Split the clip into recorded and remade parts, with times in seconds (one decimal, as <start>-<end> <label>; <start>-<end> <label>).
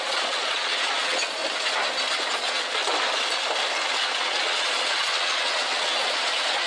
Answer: 0.0-1.4 remade; 1.4-2.1 recorded; 2.1-2.8 remade; 2.8-4.0 recorded; 4.0-6.7 remade